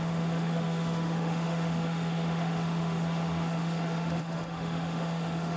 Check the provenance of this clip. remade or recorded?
remade